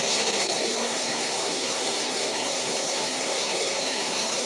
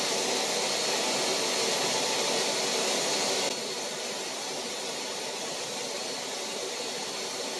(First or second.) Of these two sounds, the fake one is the first